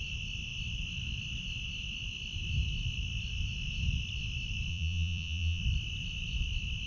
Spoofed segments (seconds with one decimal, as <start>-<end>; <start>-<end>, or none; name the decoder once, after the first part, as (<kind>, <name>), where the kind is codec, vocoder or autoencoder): 4.7-5.6 (vocoder, Vocos)